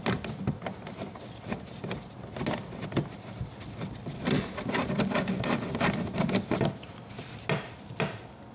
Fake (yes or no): no